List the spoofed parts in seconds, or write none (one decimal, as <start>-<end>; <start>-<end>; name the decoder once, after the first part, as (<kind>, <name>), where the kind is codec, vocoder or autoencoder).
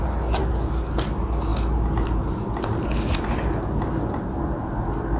0.4-0.9 (codec, DAC)